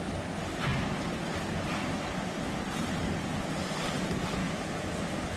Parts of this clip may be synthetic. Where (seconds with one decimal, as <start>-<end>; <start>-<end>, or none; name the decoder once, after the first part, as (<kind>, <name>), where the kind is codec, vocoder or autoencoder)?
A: 4.4-5.4 (autoencoder, DAC-VAE)